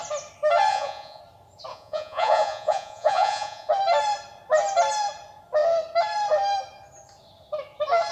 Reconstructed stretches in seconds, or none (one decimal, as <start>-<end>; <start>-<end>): 0.7-1.2; 1.7-3.7